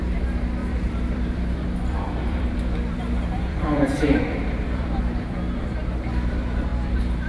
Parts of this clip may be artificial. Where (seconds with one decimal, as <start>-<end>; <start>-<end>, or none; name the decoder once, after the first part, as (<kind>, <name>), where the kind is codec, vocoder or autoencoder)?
0.6-5.0 (vocoder, BigVGAN v2)